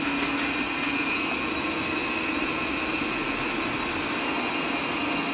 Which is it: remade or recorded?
recorded